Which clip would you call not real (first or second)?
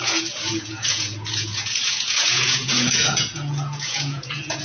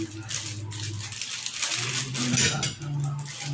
first